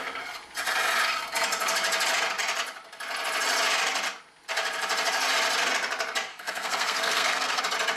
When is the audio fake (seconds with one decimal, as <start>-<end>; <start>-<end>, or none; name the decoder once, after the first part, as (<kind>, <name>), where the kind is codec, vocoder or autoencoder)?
6.3-7.6 (codec, SNAC)